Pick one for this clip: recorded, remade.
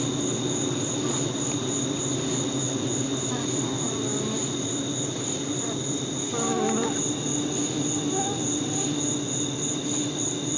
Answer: recorded